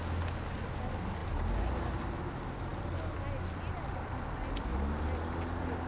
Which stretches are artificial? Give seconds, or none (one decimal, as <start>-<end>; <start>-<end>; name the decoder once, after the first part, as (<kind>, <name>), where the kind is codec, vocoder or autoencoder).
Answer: none